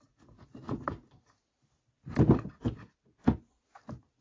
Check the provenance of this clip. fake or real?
real